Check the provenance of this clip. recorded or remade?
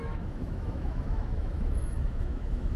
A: remade